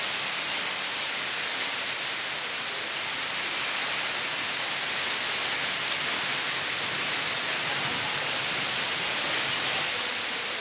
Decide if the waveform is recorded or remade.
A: recorded